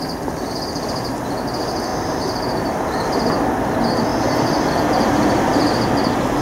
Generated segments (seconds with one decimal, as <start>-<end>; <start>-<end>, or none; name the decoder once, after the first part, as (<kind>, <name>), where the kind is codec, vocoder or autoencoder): 1.9-3.3 (vocoder, BigVGAN v2)